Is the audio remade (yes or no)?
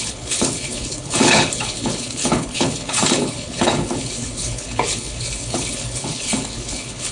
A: yes